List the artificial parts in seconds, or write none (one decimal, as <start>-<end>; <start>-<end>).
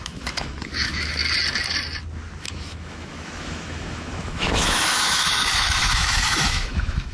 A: 0.0-1.2; 2.4-7.1